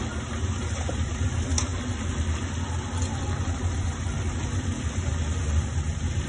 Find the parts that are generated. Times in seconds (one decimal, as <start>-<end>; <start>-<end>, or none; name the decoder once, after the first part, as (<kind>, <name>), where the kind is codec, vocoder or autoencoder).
0.0-1.7 (vocoder, BigVGAN v2); 3.1-6.3